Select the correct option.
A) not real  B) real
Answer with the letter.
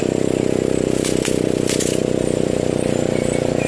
B